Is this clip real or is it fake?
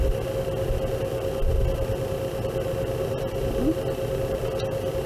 real